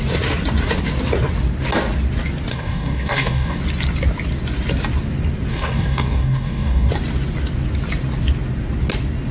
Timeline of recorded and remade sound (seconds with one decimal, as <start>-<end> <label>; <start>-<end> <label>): 0.0-2.5 recorded; 2.5-3.6 remade; 3.6-5.5 recorded; 5.5-6.9 remade; 6.9-9.3 recorded